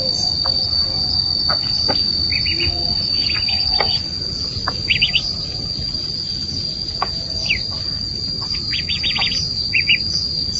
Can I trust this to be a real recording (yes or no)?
yes